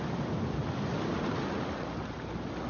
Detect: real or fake real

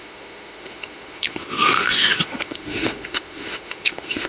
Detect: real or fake fake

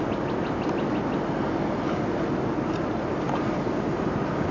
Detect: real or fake real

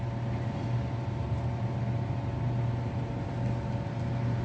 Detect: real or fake real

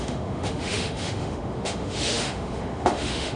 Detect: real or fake fake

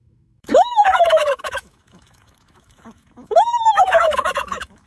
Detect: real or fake fake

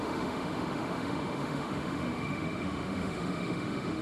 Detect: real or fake fake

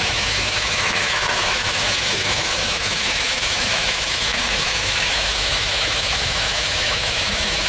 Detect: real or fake fake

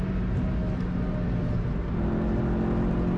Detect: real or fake real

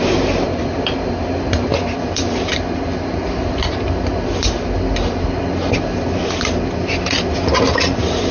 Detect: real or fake real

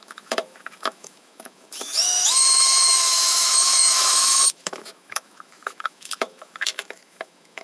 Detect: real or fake fake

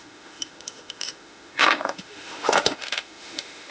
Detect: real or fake fake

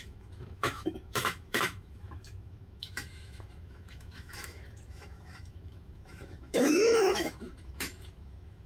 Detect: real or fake fake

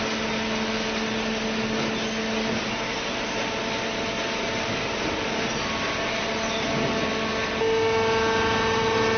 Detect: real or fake real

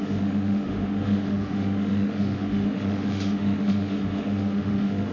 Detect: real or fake fake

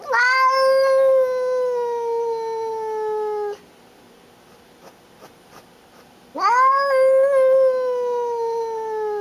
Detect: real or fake real